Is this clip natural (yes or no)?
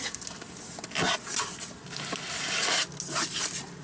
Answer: yes